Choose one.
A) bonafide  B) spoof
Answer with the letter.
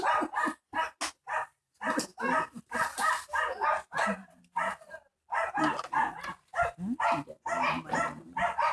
A